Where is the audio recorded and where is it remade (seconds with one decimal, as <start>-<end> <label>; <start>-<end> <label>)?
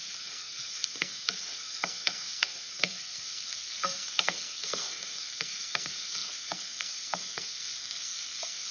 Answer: 0.0-8.7 remade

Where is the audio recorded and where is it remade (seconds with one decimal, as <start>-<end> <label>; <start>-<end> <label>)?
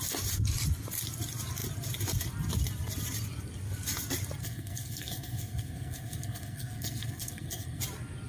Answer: 0.0-4.4 recorded; 4.4-7.8 remade; 7.8-8.3 recorded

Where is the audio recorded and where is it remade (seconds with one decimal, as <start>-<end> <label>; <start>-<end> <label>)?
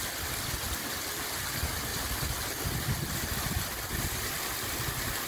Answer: 0.0-5.3 recorded